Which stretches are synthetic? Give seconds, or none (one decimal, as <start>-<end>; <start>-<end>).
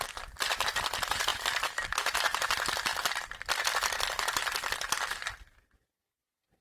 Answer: 0.0-2.9; 3.6-6.6